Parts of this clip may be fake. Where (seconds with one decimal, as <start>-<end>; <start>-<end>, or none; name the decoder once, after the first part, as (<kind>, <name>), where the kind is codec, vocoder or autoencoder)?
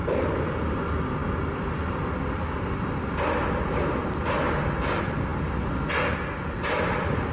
none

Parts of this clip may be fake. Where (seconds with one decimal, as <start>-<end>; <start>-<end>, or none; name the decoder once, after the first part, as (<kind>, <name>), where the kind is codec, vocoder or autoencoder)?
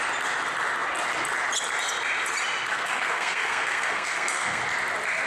2.7-4.6 (codec, SNAC)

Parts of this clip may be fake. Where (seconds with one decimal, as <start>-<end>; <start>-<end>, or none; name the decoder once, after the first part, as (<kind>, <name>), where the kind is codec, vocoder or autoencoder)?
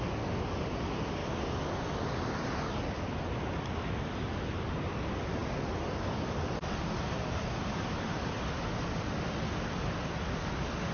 none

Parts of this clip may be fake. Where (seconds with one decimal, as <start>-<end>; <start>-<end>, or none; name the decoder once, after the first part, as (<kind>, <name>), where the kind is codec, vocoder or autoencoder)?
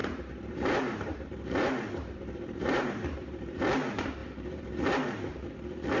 0.0-3.6 (vocoder, BigVGAN v2)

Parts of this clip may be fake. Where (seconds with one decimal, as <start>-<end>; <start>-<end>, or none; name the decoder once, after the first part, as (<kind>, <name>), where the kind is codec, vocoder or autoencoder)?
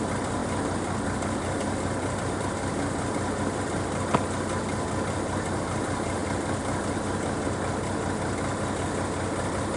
none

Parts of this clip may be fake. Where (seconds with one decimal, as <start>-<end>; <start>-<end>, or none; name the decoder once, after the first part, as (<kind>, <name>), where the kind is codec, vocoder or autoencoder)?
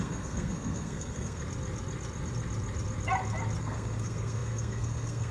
0.0-1.4 (codec, SNAC); 3.6-5.3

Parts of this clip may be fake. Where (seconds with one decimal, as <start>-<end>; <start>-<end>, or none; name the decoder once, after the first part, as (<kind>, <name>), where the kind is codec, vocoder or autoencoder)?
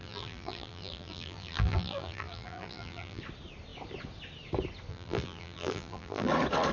0.0-3.2 (vocoder, BigVGAN v2); 4.9-6.3